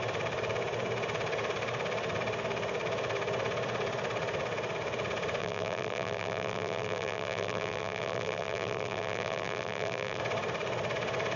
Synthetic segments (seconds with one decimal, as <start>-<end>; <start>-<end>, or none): 5.4-10.2